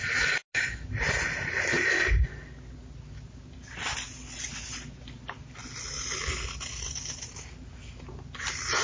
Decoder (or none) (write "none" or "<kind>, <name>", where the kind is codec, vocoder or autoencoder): none